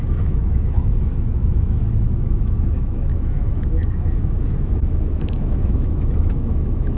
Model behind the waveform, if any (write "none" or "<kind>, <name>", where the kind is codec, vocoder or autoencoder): autoencoder, DAC-VAE